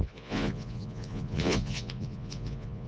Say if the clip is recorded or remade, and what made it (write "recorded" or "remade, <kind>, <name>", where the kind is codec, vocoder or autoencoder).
remade, vocoder, Vocos